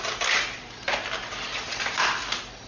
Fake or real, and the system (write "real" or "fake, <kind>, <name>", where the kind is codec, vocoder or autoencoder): real